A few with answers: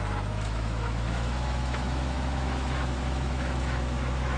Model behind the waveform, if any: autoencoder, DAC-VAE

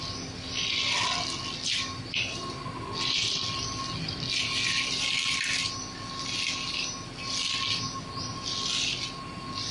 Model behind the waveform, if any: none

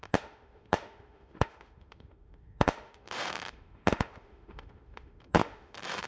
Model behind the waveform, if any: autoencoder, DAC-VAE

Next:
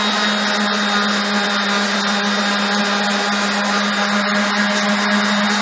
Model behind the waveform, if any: none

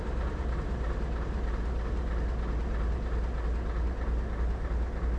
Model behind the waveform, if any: none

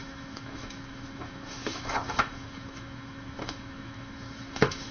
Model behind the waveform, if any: autoencoder, DAC-VAE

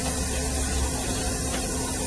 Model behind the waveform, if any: none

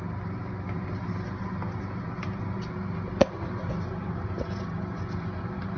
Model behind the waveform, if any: none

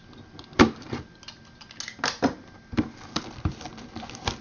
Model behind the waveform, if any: none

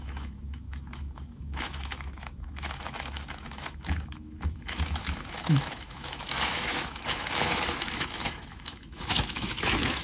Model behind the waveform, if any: autoencoder, DAC-VAE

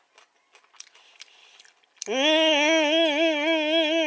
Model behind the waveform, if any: none